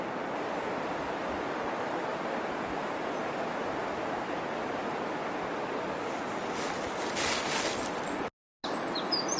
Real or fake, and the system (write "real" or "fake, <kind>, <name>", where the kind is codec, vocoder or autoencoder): real